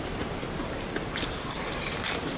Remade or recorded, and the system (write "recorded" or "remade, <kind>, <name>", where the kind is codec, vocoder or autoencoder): remade, vocoder, BigVGAN v2